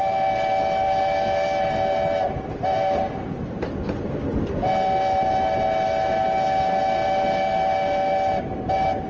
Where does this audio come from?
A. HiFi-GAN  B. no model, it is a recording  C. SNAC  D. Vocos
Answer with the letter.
B